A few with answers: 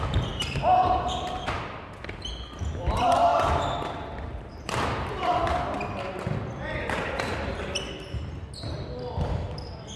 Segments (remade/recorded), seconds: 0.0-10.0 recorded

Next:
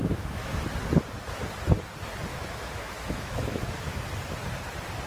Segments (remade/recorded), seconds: 0.0-0.6 remade; 0.6-2.3 recorded; 2.3-4.0 remade; 4.0-5.1 recorded